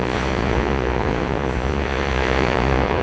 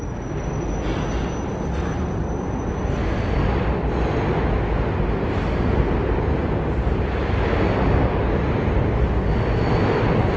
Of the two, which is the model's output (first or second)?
first